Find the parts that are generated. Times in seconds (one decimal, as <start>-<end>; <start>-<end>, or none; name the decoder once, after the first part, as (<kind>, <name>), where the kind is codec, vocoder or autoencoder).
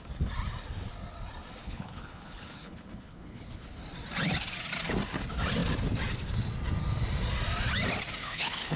1.6-3.8 (codec, HILCodec); 8.2-8.8